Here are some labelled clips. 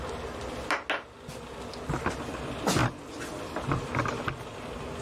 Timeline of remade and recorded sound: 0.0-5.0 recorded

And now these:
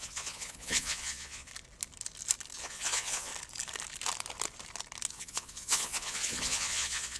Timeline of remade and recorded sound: 0.0-1.5 remade; 1.5-2.6 recorded; 2.6-3.3 remade; 3.3-5.1 recorded; 5.1-7.2 remade